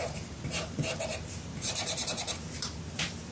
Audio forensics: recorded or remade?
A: remade